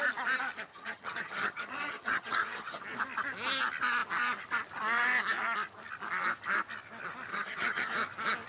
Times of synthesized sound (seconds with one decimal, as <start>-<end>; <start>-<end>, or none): 0.7-2.8; 7.3-7.9